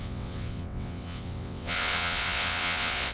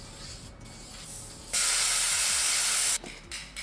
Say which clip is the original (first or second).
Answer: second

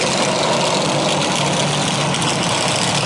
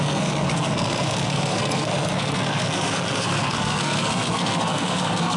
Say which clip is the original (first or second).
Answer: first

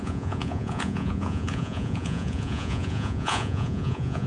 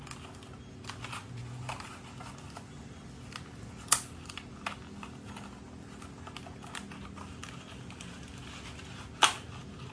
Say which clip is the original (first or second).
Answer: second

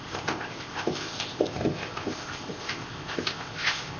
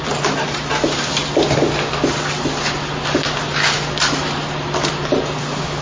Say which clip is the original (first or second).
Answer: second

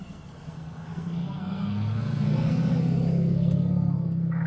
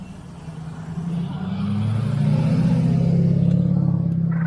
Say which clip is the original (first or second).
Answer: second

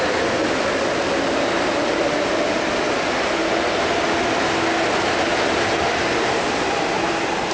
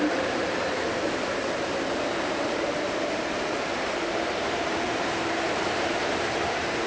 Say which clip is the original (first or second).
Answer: first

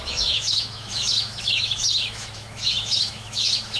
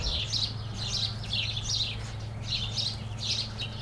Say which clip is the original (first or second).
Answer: second